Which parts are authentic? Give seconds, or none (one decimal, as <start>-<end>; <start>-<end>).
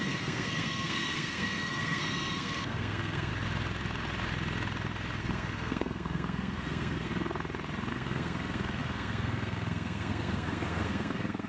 3.3-5.2; 7.1-7.9